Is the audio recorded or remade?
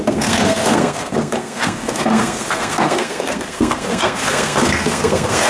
remade